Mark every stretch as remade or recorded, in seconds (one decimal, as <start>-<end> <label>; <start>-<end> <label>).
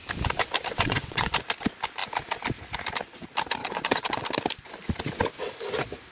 0.0-0.7 recorded; 0.7-1.3 remade; 1.3-3.6 recorded; 3.6-4.2 remade; 4.2-6.1 recorded